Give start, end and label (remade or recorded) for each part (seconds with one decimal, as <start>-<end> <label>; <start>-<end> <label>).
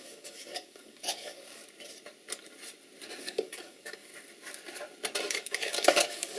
0.0-1.6 remade; 1.6-3.2 recorded; 3.2-4.1 remade; 4.1-5.3 recorded; 5.3-6.4 remade